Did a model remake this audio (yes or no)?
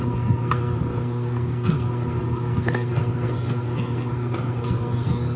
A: yes